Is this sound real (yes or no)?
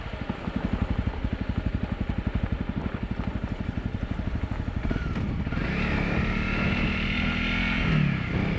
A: yes